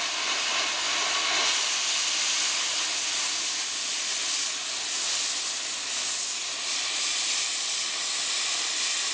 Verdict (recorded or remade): recorded